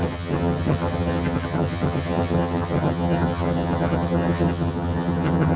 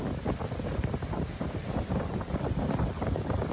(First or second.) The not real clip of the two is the first